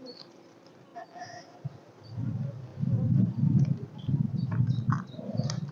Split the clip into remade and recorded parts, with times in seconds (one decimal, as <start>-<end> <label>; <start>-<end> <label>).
0.0-5.7 recorded